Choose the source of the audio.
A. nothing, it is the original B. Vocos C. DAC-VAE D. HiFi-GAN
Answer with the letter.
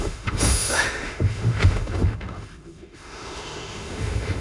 C